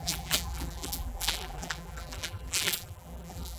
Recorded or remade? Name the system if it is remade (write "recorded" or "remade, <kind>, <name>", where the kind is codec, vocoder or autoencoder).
remade, vocoder, BigVGAN v2